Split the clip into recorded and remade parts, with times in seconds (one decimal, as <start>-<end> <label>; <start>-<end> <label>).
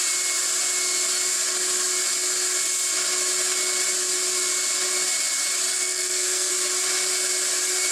0.0-5.7 recorded; 5.7-6.5 remade; 6.5-7.9 recorded